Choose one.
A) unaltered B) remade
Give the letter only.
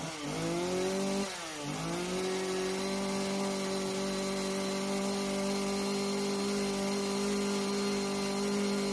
A